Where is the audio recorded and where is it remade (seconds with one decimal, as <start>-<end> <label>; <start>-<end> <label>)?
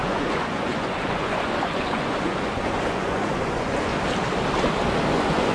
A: 0.0-3.9 remade; 3.9-5.1 recorded; 5.1-5.5 remade